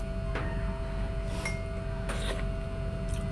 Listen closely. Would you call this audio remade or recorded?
recorded